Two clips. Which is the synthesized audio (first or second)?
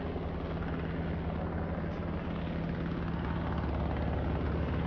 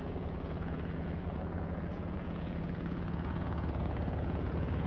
second